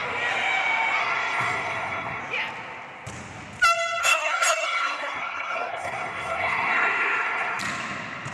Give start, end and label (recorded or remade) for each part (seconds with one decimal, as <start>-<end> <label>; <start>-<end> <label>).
0.0-1.0 recorded; 1.0-2.2 remade; 2.2-4.0 recorded; 4.0-7.6 remade; 7.6-8.3 recorded